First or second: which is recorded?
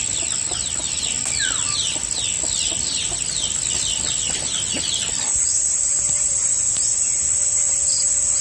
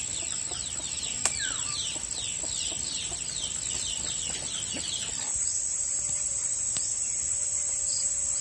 first